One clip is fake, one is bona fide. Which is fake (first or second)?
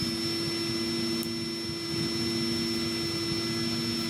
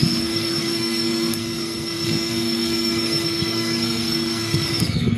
second